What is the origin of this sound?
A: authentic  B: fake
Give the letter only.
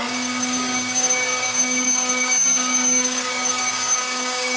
B